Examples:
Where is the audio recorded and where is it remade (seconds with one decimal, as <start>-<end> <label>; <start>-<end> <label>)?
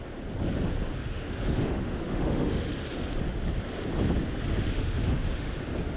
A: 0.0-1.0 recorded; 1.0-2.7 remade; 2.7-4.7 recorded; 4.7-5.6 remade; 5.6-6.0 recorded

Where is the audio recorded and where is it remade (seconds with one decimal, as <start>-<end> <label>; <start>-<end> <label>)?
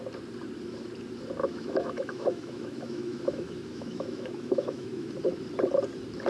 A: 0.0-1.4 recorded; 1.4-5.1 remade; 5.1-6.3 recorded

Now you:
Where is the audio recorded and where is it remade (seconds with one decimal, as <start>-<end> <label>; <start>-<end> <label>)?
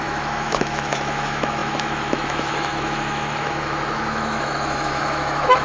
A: 0.0-5.6 remade